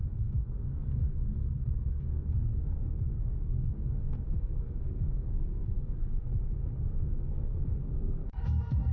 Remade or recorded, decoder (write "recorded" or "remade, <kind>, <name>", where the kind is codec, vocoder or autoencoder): remade, codec, SNAC